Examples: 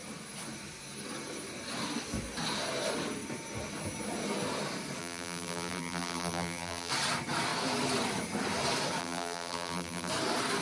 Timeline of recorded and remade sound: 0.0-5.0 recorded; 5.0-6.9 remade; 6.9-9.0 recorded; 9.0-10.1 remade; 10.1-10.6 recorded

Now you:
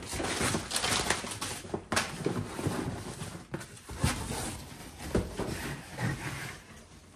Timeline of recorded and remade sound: 0.0-7.2 recorded